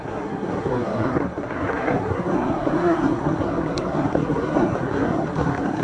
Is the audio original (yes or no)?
no